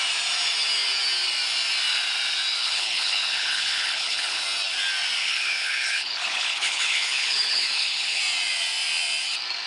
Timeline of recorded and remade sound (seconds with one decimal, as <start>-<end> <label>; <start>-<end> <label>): 0.0-2.6 recorded; 2.6-4.4 remade; 4.4-5.2 recorded; 5.2-8.2 remade; 8.2-9.7 recorded